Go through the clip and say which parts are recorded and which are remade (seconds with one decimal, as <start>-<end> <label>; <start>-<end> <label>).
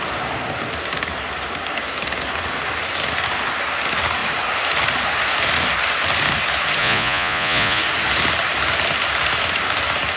0.0-6.8 recorded; 6.8-7.8 remade; 7.8-10.2 recorded